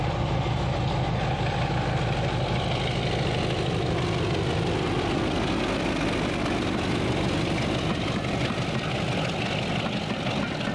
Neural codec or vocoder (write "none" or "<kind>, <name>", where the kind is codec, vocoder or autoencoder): none